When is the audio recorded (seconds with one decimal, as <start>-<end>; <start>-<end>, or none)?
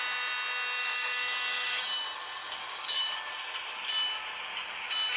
0.0-0.8; 1.8-2.6; 3.3-5.2